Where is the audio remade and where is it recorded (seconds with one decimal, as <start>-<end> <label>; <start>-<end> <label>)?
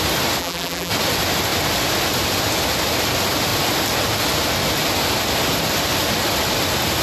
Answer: 0.0-0.4 recorded; 0.4-0.9 remade; 0.9-7.0 recorded